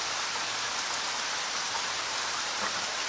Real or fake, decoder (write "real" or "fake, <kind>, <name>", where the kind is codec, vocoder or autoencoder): real